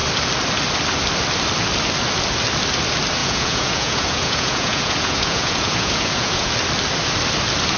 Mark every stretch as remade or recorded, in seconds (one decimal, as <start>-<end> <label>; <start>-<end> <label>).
0.0-3.2 recorded; 3.2-6.5 remade; 6.5-7.8 recorded